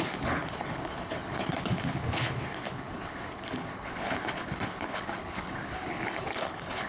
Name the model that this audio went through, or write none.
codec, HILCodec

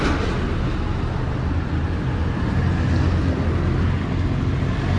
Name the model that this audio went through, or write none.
none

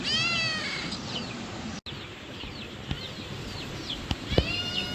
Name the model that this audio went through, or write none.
none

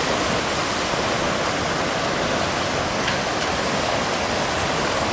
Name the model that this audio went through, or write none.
none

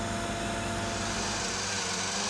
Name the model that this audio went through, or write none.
none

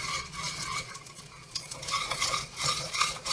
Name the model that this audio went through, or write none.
vocoder, Vocos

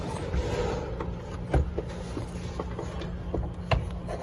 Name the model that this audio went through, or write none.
none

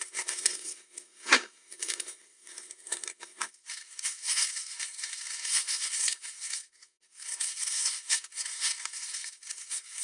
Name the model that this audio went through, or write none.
codec, SNAC